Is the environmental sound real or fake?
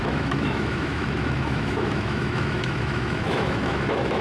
fake